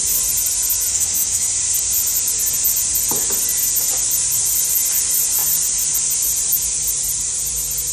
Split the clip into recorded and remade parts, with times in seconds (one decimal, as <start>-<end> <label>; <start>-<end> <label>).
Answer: 0.0-0.9 recorded; 0.9-1.5 remade; 1.5-7.9 recorded